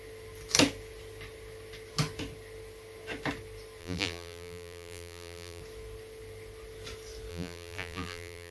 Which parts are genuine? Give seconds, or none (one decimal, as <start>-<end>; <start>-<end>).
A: 0.0-3.8; 5.6-7.3